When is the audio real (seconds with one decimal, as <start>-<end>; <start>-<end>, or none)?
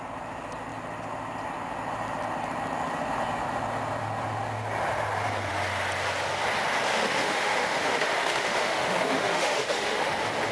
0.0-6.9; 10.1-10.5